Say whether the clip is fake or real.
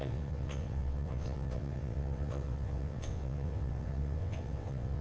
fake